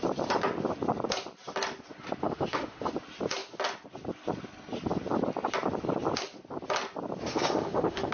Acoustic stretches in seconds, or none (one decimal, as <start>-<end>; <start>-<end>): 0.0-2.2; 2.9-7.3